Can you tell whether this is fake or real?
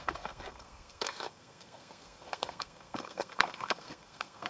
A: fake